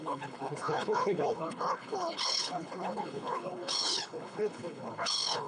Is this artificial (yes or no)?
yes